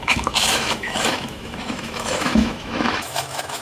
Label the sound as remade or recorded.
remade